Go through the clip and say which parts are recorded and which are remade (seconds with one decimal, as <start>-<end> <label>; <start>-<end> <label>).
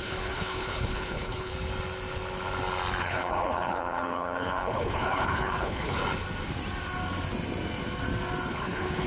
0.0-1.5 remade; 1.5-3.0 recorded; 3.0-6.0 remade; 6.0-8.5 recorded; 8.5-9.1 remade